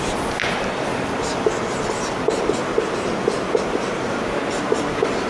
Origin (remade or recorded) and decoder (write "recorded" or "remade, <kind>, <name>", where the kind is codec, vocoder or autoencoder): recorded